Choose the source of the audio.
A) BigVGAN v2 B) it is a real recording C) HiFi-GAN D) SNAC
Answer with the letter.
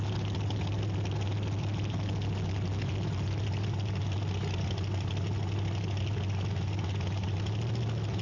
B